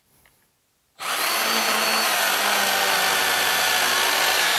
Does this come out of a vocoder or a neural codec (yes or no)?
no